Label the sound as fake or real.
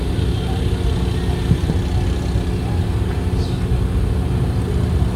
real